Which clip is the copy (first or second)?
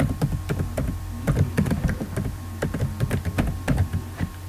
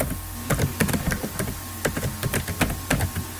first